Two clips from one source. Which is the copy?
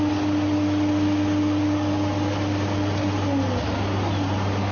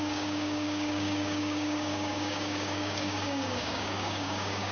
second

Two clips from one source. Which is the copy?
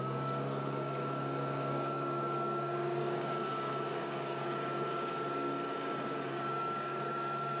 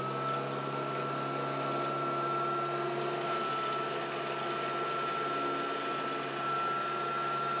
first